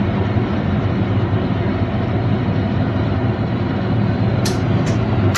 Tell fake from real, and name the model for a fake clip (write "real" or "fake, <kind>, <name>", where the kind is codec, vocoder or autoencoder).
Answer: fake, vocoder, BigVGAN v2